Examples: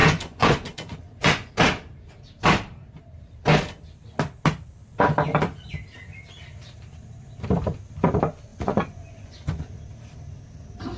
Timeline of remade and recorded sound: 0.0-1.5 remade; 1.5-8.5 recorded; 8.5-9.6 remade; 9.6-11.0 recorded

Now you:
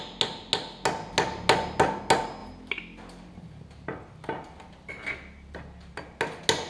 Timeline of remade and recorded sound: 0.0-6.7 recorded

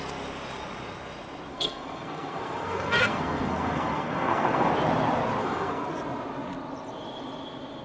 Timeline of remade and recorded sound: 0.0-1.5 recorded; 1.5-4.7 remade; 4.7-5.4 recorded; 5.4-5.9 remade; 5.9-7.8 recorded

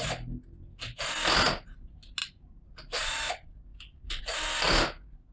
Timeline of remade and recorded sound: 0.0-2.2 recorded; 2.2-3.1 remade; 3.1-3.7 recorded; 3.7-4.2 remade; 4.2-5.3 recorded

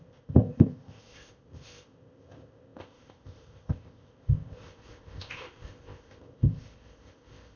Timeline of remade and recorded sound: 0.0-7.6 remade